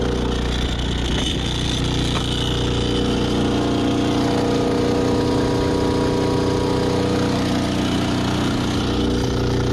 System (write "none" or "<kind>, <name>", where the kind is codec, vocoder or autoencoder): none